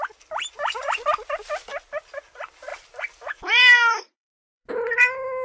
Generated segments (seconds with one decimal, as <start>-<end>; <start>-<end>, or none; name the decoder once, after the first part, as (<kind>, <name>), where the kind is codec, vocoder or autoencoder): 1.7-2.3 (vocoder, BigVGAN v2); 2.7-4.7